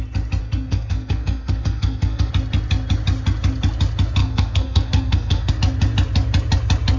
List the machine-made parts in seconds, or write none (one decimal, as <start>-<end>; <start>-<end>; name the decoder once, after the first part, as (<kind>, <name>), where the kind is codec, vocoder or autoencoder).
0.4-2.3 (codec, SNAC); 4.2-5.5